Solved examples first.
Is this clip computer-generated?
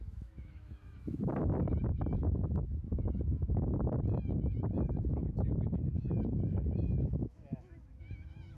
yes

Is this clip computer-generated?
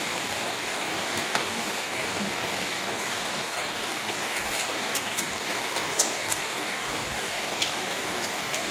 yes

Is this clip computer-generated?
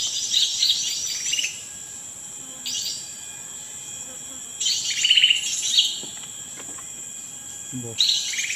no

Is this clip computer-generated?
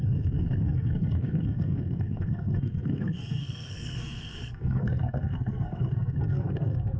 yes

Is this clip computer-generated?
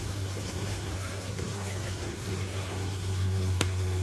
yes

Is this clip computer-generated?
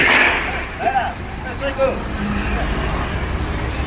no